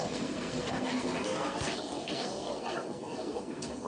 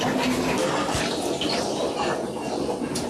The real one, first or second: second